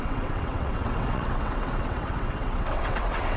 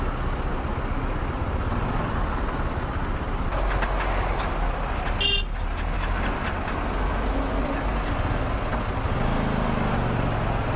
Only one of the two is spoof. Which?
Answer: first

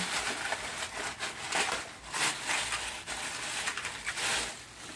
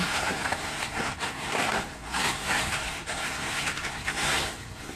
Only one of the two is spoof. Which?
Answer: second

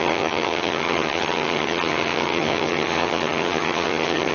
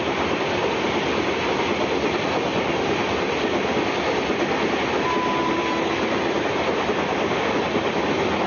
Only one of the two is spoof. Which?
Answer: first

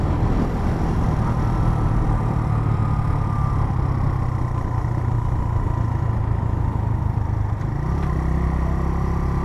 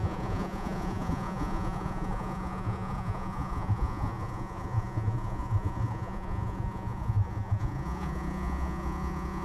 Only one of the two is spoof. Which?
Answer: second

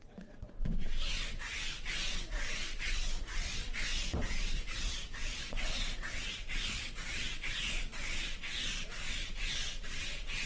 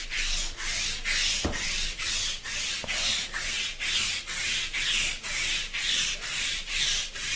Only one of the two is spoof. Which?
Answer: first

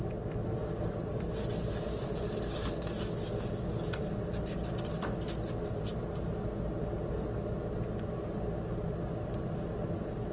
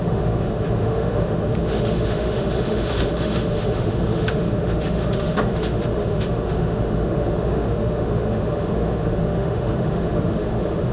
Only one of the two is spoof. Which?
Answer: second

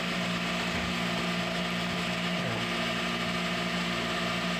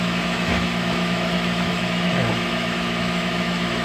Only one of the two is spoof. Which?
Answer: second